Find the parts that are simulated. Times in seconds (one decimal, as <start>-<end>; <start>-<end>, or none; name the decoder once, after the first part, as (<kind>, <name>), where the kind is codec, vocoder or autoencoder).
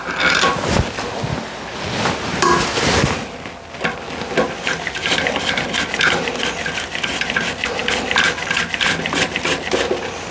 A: none